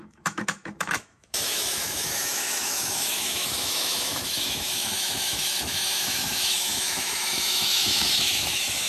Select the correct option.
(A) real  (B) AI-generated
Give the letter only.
B